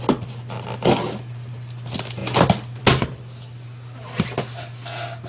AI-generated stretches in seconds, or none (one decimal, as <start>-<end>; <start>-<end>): none